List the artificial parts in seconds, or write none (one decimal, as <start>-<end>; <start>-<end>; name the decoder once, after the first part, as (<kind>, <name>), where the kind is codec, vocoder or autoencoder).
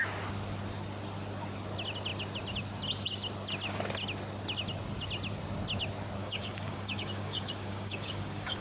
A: 6.2-8.6 (codec, DAC)